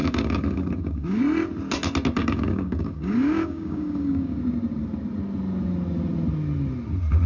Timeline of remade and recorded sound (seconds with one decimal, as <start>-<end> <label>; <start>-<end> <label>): 0.0-1.2 remade; 1.2-2.2 recorded; 2.2-4.4 remade; 4.4-7.3 recorded